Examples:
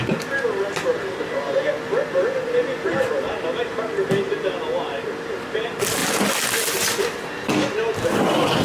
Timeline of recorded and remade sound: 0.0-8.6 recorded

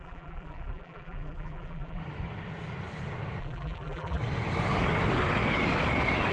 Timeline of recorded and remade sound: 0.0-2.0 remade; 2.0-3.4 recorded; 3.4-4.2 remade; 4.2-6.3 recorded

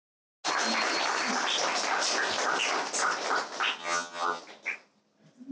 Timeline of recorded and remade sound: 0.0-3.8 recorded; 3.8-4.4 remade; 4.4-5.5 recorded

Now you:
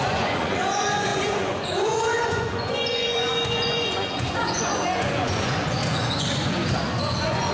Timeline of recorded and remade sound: 0.0-7.5 remade

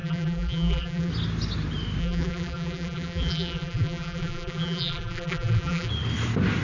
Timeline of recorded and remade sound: 0.0-1.1 remade; 1.1-2.0 recorded; 2.0-5.9 remade; 5.9-6.6 recorded

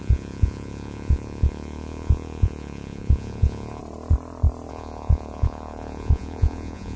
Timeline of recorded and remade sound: 0.0-3.8 remade; 3.8-4.7 recorded; 4.7-7.0 remade

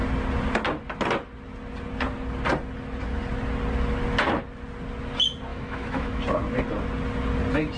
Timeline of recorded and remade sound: 0.0-5.5 recorded; 5.5-6.2 remade; 6.2-7.8 recorded